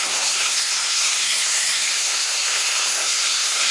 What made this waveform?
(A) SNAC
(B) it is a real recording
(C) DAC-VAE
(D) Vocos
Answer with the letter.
A